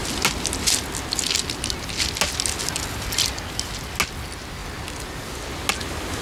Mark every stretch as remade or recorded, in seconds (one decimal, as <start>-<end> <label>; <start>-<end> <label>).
0.0-6.2 recorded